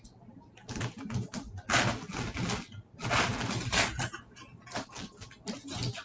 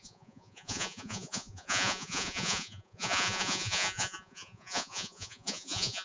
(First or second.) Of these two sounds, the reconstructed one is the second